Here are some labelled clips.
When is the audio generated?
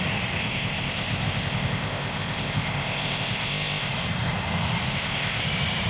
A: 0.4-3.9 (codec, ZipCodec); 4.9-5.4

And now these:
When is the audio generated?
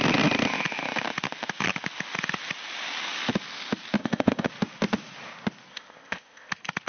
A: 4.0-4.5 (codec, ZipCodec); 5.7-6.5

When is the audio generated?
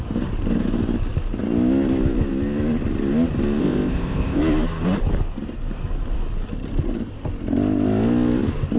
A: 3.6-4.4 (codec, ZipCodec)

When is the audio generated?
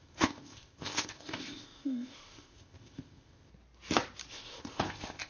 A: 0.0-3.5 (codec, ZipCodec); 4.3-5.3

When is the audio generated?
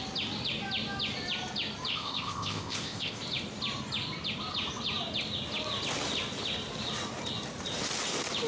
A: 1.9-3.2 (codec, ZipCodec)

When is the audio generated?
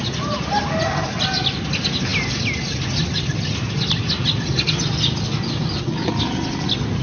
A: none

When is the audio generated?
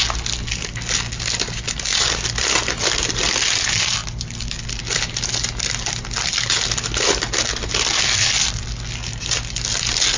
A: none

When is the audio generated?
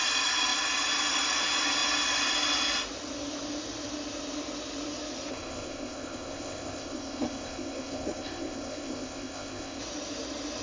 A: 5.3-9.8 (codec, ZipCodec)